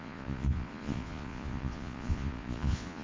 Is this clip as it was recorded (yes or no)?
no